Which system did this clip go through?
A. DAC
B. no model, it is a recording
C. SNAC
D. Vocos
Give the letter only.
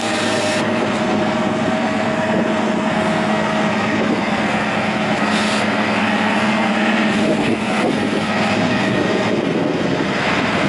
C